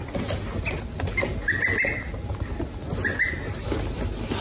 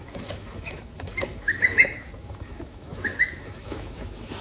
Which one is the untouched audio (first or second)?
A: first